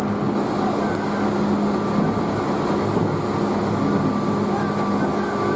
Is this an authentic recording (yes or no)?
yes